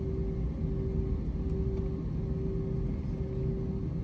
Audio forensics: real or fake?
real